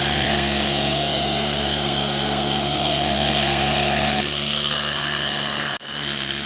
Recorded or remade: remade